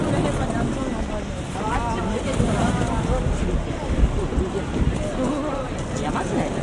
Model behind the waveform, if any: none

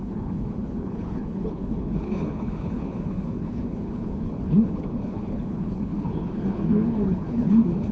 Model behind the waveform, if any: codec, HILCodec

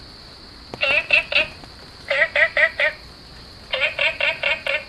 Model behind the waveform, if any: none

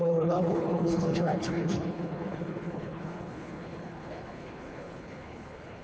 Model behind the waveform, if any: codec, HILCodec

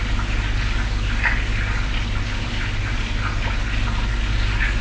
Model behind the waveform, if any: none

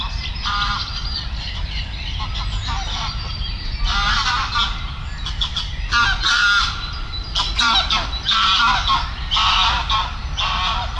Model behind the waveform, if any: none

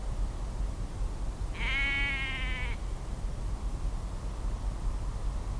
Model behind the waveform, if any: none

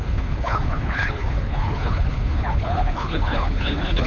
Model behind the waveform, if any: codec, HILCodec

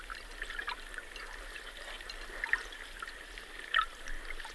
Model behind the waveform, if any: none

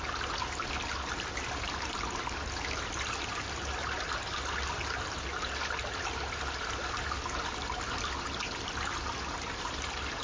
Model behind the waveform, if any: none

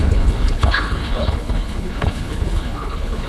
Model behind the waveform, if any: codec, HILCodec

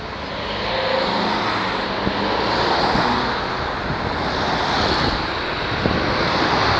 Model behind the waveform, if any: none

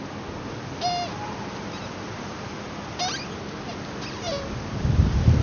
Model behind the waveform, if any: none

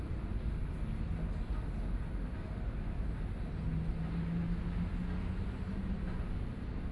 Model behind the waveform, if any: none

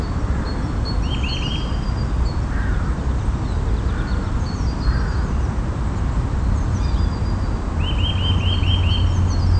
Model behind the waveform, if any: none